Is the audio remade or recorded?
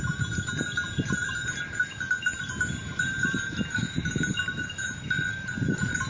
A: recorded